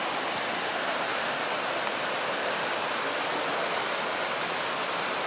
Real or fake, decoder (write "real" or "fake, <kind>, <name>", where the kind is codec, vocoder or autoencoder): real